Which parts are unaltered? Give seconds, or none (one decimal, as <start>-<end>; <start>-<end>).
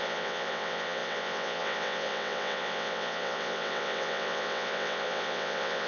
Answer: none